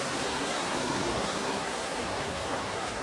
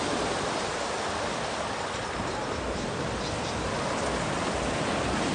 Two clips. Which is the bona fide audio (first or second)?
second